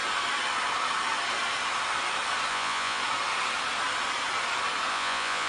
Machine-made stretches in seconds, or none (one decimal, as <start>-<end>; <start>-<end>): 2.5-3.0; 4.9-5.5